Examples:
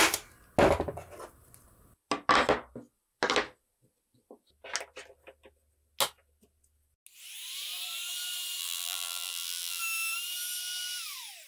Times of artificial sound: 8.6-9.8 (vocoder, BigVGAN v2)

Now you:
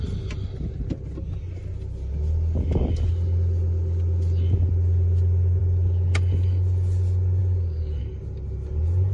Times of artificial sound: none

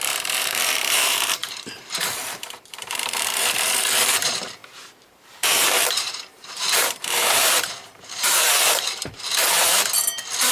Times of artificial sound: 0.0-9.4 (vocoder, BigVGAN v2)

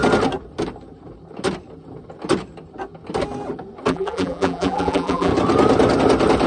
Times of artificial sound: 3.9-5.3 (vocoder, BigVGAN v2)

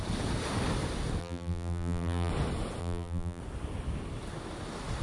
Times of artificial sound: 1.2-2.3 (vocoder, BigVGAN v2); 2.8-3.4